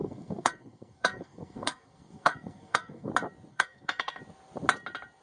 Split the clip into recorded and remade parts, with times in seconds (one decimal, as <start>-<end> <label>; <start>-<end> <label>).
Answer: 0.0-3.1 remade; 3.1-3.5 recorded; 3.5-4.2 remade; 4.2-5.2 recorded